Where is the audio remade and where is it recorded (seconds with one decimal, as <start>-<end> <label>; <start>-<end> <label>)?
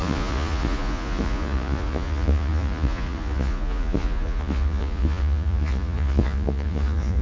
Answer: 0.0-7.2 remade